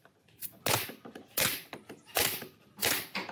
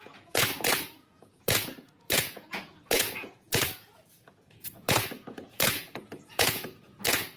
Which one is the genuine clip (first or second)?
first